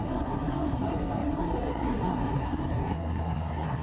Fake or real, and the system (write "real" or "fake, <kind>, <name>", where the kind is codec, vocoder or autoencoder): fake, codec, SNAC